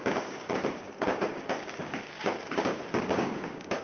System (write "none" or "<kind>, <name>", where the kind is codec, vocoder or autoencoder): codec, DAC